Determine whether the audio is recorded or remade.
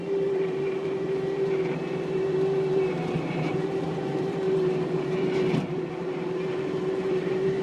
remade